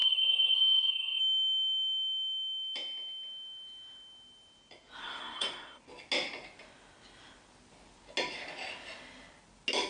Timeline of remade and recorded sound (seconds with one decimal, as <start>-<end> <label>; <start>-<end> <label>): 0.0-1.2 remade; 1.2-5.0 recorded; 5.0-5.8 remade; 5.8-9.9 recorded